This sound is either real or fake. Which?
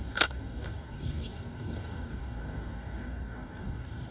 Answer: fake